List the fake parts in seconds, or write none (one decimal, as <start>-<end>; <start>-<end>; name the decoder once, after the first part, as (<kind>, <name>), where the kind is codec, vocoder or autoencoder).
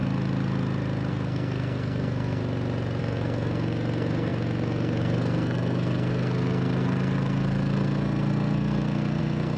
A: 1.1-2.4 (codec, SNAC); 3.0-9.6